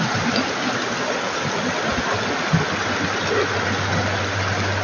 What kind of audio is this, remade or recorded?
recorded